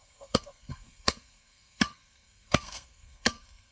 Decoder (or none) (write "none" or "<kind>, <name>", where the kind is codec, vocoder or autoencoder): codec, SNAC